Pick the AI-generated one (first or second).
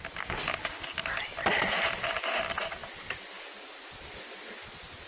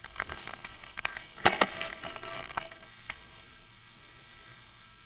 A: second